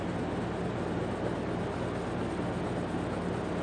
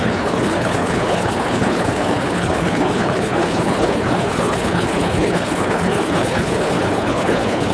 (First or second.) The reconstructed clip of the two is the second